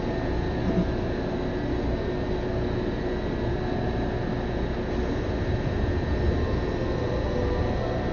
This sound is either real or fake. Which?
real